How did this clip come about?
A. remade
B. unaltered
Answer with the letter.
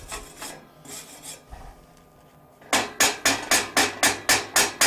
B